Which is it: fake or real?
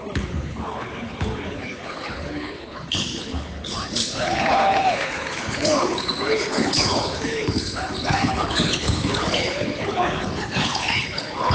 fake